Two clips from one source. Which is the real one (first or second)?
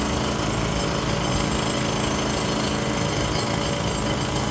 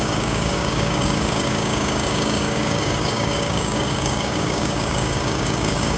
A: first